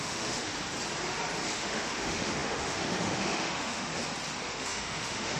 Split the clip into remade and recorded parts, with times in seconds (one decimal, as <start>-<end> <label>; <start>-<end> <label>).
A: 0.0-0.5 remade; 0.5-1.5 recorded; 1.5-3.9 remade; 3.9-4.5 recorded; 4.5-5.4 remade